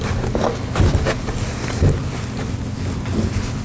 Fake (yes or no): no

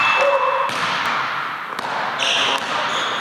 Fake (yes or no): no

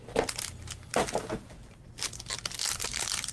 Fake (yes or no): no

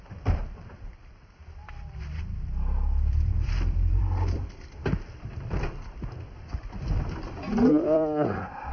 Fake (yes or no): yes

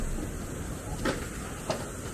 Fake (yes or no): no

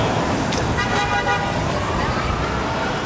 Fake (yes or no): yes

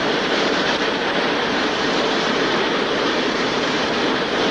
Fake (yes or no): yes